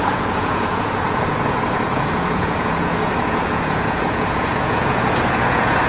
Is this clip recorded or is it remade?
remade